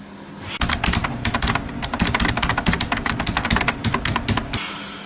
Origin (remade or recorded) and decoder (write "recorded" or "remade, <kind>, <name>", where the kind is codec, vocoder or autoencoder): recorded